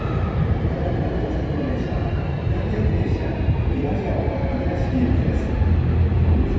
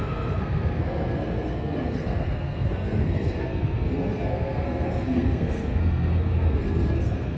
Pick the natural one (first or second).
first